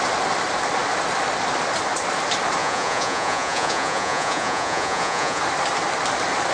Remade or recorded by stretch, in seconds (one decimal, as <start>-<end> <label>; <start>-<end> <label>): 0.0-2.6 recorded; 2.6-5.4 remade; 5.4-6.5 recorded